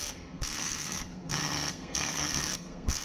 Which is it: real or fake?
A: fake